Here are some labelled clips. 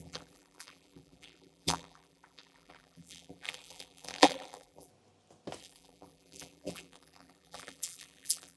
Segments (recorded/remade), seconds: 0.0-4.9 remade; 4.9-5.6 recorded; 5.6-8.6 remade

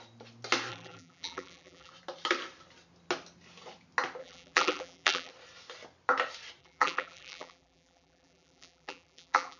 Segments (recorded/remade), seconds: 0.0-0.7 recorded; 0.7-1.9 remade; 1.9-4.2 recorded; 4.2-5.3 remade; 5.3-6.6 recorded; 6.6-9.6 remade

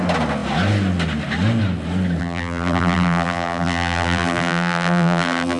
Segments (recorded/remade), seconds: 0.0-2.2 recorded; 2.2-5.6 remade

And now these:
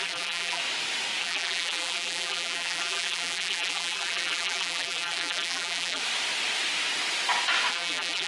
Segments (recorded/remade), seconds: 0.0-0.6 remade; 0.6-1.2 recorded; 1.2-6.0 remade; 6.0-7.7 recorded; 7.7-8.3 remade

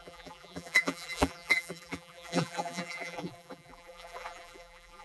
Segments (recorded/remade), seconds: 0.0-5.0 remade

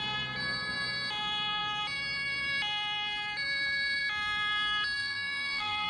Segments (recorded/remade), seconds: 0.0-5.0 recorded; 5.0-5.9 remade

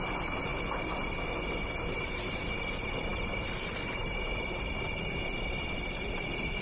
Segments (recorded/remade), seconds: 0.0-0.5 remade; 0.5-1.9 recorded; 1.9-6.6 remade